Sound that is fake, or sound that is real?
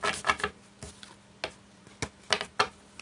real